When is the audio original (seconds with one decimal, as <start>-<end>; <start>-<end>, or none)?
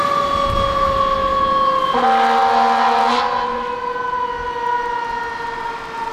0.0-6.1